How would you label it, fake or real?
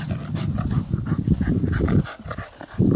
fake